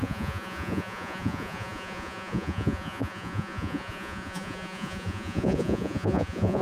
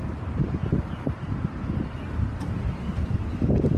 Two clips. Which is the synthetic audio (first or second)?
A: first